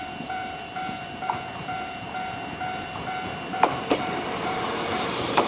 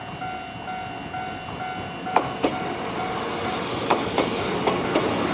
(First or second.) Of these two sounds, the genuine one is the second